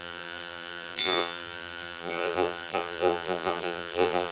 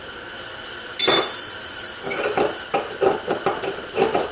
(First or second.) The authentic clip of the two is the second